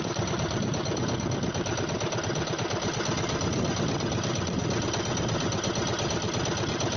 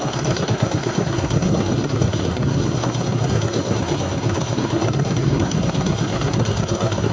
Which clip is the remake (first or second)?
second